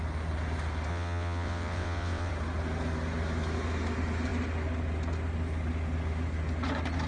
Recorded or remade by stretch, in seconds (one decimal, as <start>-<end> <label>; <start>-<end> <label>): 0.0-0.9 recorded; 0.9-2.3 remade; 2.3-7.1 recorded